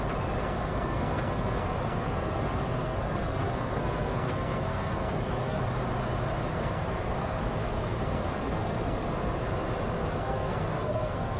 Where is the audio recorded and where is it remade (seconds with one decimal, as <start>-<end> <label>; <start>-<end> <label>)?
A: 0.0-0.4 recorded; 0.4-5.6 remade; 5.6-6.5 recorded; 6.5-9.4 remade; 9.4-10.0 recorded; 10.0-11.4 remade